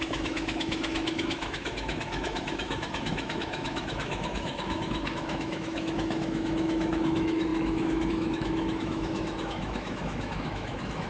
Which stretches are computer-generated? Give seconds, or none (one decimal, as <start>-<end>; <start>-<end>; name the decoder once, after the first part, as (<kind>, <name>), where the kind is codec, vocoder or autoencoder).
0.0-11.1 (autoencoder, DAC-VAE)